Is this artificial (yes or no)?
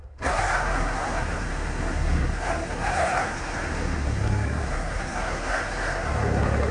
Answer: yes